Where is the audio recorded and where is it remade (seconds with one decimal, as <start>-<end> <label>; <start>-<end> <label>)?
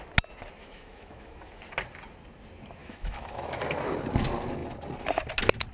0.0-0.6 recorded; 0.6-1.5 remade; 1.5-2.8 recorded; 2.8-3.6 remade; 3.6-5.7 recorded